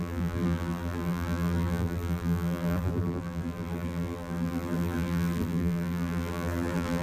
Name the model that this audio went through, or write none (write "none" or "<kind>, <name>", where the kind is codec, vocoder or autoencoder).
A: vocoder, BigVGAN v2